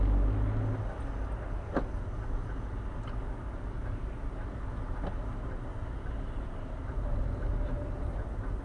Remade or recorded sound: recorded